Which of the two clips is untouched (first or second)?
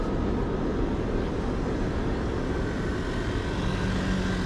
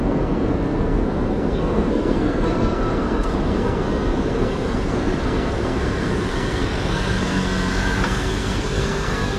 first